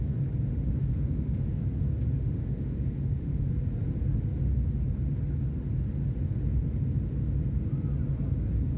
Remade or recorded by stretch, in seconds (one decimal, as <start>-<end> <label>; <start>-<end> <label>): 0.0-0.5 recorded; 0.5-1.6 remade; 1.6-2.2 recorded; 2.2-3.5 remade; 3.5-8.8 recorded